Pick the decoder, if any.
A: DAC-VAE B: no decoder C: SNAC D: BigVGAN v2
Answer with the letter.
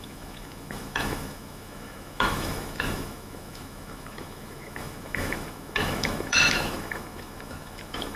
A